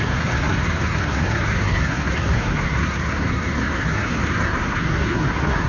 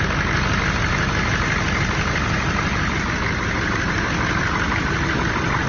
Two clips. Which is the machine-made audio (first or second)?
first